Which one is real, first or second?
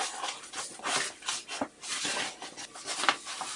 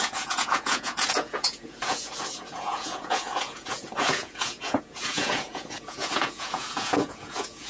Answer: first